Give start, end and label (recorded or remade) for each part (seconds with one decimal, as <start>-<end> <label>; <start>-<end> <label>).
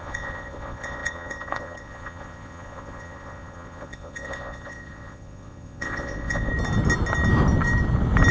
0.0-6.5 remade; 6.5-8.3 recorded